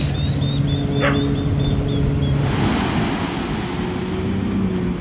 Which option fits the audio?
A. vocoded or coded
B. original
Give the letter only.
B